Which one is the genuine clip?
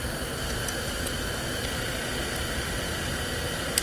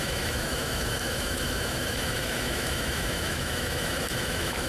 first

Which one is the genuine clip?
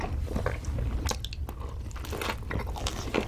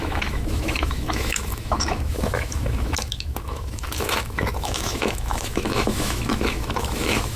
first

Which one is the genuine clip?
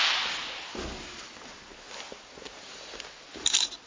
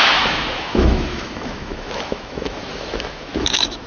first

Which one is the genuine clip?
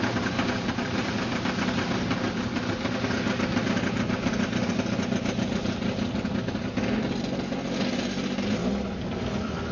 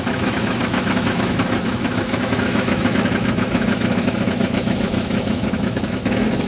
first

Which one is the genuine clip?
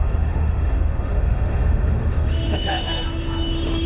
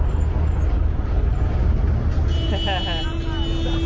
second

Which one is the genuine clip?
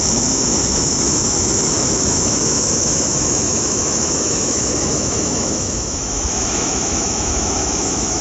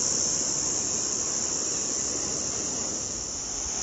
second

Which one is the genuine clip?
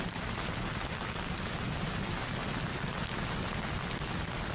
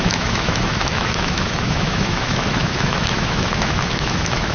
first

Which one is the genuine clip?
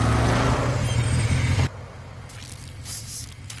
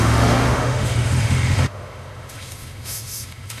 first